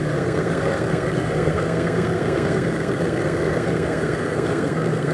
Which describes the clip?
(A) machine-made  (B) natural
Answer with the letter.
A